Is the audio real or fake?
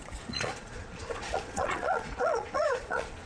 fake